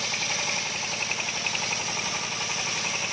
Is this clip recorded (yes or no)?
yes